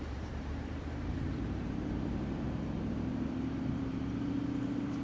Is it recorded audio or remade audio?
remade